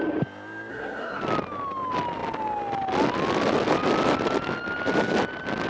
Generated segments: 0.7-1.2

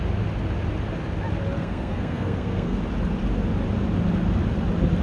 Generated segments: 1.6-2.8

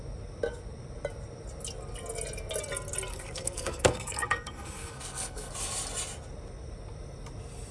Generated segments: 3.1-5.5

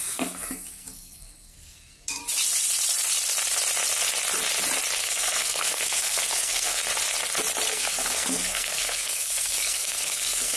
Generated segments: 0.0-2.2; 5.0-6.8; 7.7-10.6

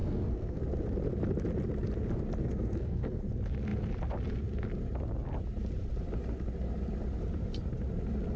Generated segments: 0.0-0.6; 2.4-3.2

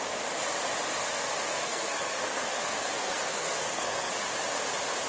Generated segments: 1.0-4.1

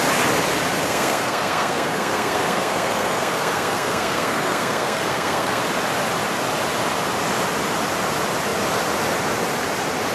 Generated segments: 0.8-5.6

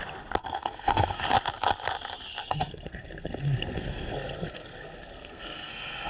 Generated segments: 0.4-1.2; 2.4-6.1